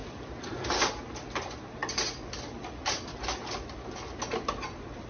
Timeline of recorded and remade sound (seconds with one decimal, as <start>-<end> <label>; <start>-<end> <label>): 0.0-0.9 remade; 0.9-1.8 recorded; 1.8-3.9 remade; 3.9-5.1 recorded